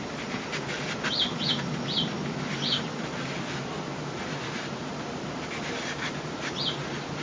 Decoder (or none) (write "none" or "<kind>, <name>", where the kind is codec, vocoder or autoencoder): none